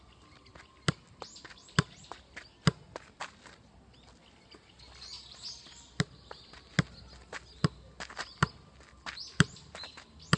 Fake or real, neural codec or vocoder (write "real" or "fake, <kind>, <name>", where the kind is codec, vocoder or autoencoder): real